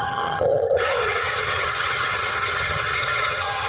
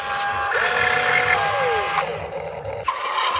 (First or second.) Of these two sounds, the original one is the second